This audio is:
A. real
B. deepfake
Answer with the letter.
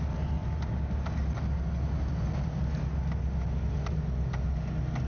A